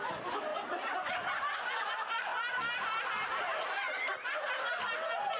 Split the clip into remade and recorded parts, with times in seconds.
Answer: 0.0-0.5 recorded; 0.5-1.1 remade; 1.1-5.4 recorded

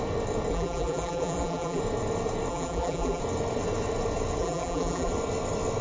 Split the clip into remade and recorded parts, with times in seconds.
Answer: 0.0-0.5 recorded; 0.5-1.8 remade; 1.8-2.5 recorded; 2.5-3.2 remade; 3.2-4.4 recorded; 4.4-5.1 remade; 5.1-5.8 recorded

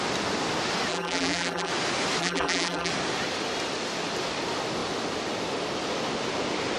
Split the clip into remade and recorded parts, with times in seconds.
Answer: 0.0-0.9 recorded; 0.9-1.7 remade; 1.7-2.2 recorded; 2.2-2.9 remade; 2.9-6.8 recorded

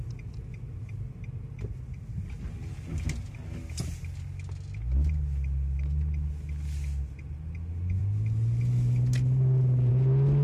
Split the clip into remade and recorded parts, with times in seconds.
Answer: 0.0-10.4 recorded

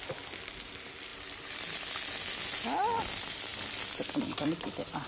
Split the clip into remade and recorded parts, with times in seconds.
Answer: 0.0-1.1 recorded; 1.1-1.8 remade; 1.8-3.5 recorded; 3.5-5.1 remade